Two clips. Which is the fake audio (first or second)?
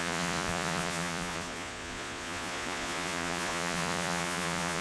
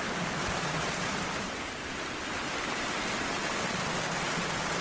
first